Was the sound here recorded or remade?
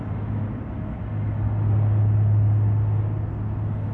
recorded